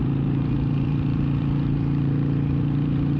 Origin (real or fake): fake